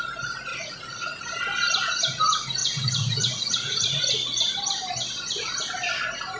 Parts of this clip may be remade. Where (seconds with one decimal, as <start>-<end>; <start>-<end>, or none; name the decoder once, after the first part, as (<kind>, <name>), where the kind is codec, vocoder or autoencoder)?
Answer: 0.5-1.2 (vocoder, Vocos); 2.6-4.0